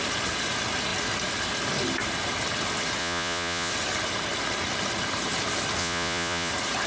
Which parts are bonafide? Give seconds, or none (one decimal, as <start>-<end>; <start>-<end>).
0.0-3.0; 3.7-5.8; 6.5-6.9